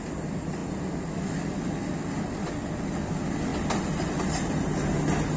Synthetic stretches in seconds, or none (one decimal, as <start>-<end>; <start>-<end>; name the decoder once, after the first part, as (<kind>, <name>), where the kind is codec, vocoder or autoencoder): none